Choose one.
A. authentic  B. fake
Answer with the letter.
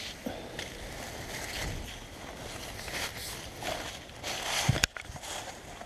A